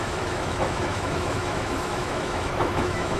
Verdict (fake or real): fake